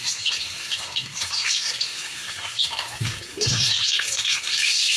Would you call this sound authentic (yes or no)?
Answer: no